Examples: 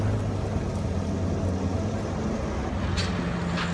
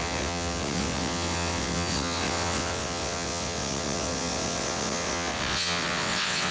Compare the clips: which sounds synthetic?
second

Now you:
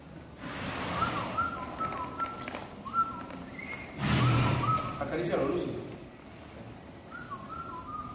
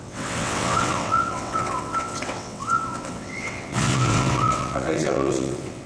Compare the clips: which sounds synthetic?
second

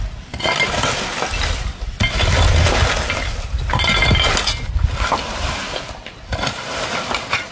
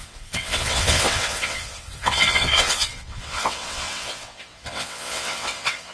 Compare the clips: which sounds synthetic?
second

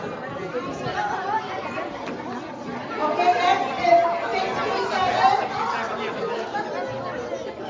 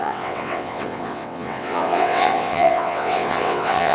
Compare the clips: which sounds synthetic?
second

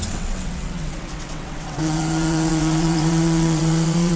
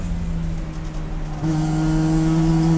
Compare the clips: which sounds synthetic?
first